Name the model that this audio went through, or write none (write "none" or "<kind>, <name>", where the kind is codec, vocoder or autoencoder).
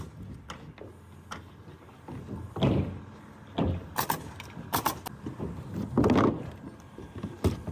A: none